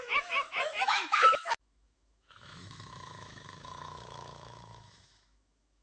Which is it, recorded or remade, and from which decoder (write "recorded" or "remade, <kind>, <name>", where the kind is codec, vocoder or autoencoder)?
remade, autoencoder, DAC-VAE